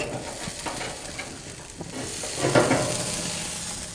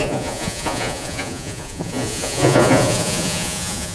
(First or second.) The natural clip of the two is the first